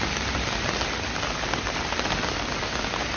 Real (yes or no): yes